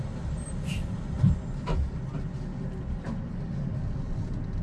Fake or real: real